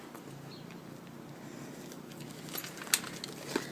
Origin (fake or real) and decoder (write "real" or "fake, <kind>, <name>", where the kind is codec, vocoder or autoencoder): real